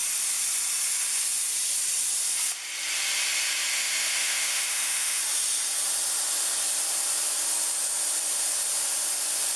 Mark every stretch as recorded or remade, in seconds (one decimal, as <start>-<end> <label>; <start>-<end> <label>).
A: 0.0-3.7 recorded; 3.7-5.2 remade; 5.2-9.6 recorded